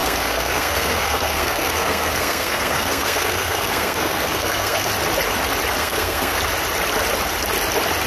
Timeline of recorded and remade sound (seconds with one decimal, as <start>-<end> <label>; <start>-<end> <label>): 0.0-4.9 remade; 4.9-5.8 recorded; 5.8-6.4 remade; 6.4-8.1 recorded